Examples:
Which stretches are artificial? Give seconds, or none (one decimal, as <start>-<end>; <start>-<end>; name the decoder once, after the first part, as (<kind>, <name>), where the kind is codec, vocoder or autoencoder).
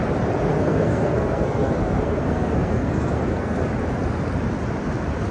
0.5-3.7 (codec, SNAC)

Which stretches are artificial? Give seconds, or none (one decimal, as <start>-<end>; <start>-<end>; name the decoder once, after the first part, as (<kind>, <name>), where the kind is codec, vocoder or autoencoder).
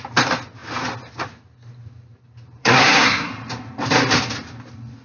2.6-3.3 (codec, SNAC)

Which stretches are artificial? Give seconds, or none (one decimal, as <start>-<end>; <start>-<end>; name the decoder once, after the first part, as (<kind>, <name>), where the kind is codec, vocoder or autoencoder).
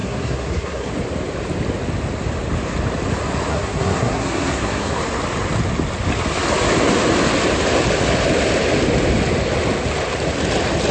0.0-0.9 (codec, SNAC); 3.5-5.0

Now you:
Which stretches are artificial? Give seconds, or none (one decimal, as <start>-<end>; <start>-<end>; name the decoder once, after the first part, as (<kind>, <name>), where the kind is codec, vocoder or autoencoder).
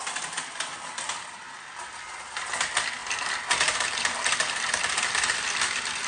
none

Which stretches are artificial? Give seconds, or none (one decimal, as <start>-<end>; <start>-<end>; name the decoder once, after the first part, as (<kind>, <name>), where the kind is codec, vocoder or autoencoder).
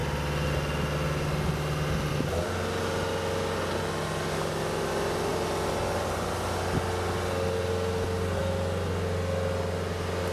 none